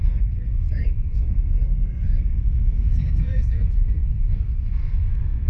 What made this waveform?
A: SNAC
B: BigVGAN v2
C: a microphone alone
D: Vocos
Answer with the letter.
A